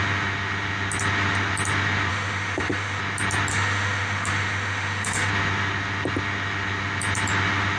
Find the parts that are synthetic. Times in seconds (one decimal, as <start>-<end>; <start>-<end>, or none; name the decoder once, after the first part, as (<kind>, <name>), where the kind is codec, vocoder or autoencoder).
2.1-3.0 (autoencoder, DAC-VAE); 3.5-5.3